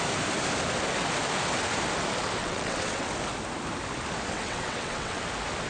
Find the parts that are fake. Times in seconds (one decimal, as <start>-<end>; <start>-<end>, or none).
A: 2.4-3.1; 4.3-5.2